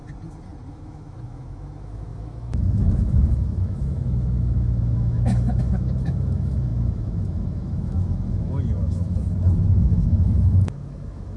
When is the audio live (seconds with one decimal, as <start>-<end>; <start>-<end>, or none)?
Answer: 0.0-0.7